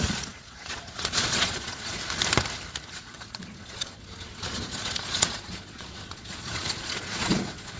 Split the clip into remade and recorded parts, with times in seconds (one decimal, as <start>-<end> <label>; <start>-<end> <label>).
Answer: 0.0-2.0 remade; 2.0-2.9 recorded; 2.9-7.8 remade